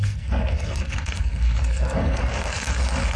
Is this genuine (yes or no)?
no